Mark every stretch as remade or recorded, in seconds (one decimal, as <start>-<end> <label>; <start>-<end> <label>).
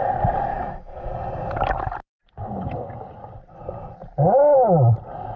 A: 0.0-0.5 recorded; 0.5-1.1 remade; 1.1-5.4 recorded